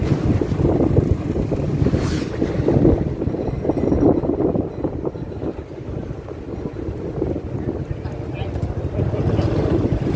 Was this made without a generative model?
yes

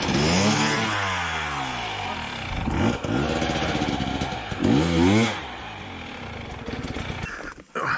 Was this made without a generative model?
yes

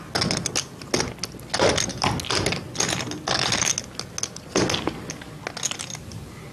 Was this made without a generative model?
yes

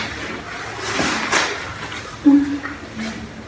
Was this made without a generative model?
yes